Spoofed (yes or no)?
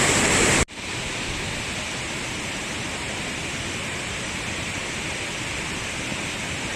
no